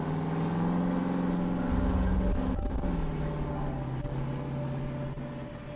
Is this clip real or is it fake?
real